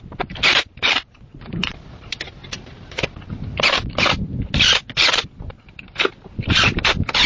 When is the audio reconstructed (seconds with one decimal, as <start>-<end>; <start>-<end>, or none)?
0.0-2.4; 3.6-7.3